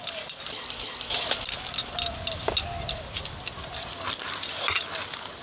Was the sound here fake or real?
real